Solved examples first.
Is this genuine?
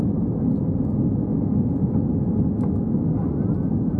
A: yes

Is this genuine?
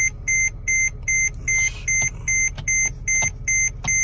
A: yes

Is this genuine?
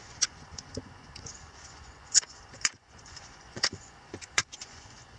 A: no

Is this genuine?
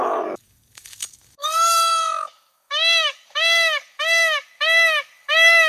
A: no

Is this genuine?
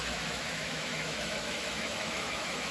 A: no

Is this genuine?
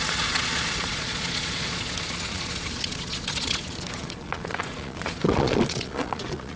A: no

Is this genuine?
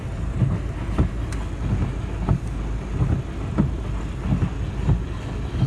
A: yes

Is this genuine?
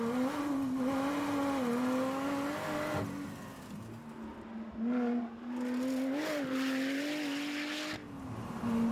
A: yes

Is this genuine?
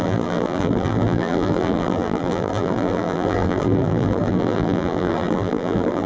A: no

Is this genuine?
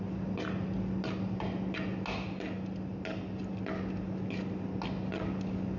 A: yes